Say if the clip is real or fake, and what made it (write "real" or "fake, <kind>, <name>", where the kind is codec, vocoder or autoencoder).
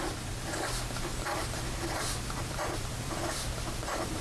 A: fake, vocoder, BigVGAN v2